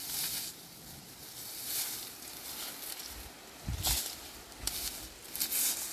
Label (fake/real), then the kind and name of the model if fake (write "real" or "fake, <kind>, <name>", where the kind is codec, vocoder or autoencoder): real